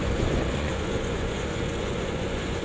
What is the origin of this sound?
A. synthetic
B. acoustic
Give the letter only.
A